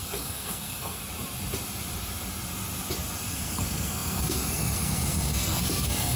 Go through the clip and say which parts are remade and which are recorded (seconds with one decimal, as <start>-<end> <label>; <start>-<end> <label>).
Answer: 0.0-1.0 remade; 1.0-3.3 recorded; 3.3-6.2 remade